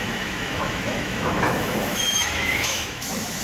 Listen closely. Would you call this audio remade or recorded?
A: remade